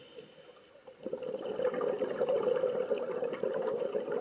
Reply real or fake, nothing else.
real